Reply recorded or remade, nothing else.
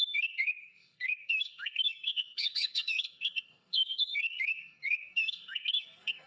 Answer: remade